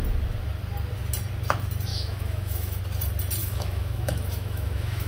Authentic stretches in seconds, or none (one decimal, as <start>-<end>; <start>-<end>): 0.0-1.9; 2.8-3.4